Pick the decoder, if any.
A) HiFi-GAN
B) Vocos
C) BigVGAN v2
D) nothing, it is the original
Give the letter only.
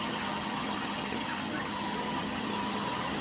A